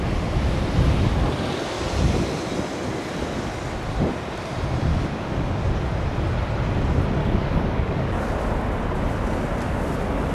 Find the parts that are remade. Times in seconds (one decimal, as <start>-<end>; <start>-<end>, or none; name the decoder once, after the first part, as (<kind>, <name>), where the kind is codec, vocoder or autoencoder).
4.9-5.5 (codec, DAC); 7.2-8.3